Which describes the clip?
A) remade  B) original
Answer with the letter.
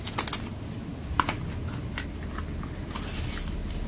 B